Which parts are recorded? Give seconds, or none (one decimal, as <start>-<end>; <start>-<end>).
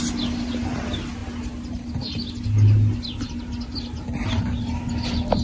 0.0-5.4